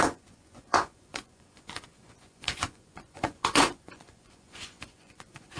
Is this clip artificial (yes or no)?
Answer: yes